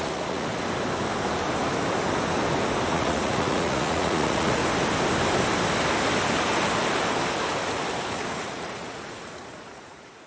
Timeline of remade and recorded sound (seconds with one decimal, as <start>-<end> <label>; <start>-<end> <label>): 0.0-0.5 remade; 0.5-2.9 recorded; 2.9-4.6 remade; 4.6-8.1 recorded; 8.1-10.3 remade

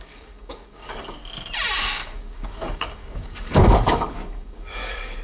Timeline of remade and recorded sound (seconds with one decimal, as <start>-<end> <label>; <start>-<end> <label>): 0.0-1.2 remade; 1.2-1.8 recorded; 1.8-5.2 remade

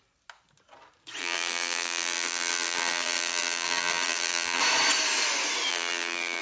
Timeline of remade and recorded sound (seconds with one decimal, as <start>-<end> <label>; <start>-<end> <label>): 0.0-1.2 recorded; 1.2-4.6 remade; 4.6-5.7 recorded; 5.7-6.4 remade